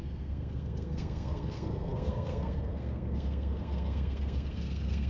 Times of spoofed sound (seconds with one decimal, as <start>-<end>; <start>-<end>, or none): 0.0-5.1